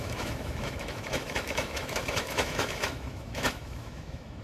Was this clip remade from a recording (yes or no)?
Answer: yes